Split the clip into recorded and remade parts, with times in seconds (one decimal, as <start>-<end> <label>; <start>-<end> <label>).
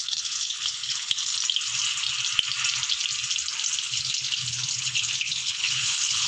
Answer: 0.0-1.3 remade; 1.3-3.8 recorded; 3.8-6.3 remade